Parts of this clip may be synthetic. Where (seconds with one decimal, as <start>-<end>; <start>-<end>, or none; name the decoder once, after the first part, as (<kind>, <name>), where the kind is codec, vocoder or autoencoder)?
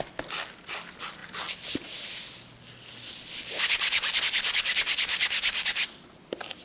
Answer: none